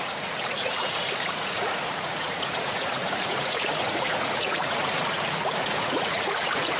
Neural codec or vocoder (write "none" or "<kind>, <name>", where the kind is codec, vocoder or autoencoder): vocoder, Vocos